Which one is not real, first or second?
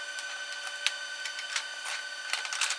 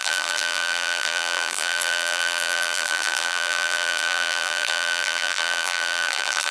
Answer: second